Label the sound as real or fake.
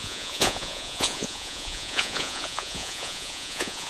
fake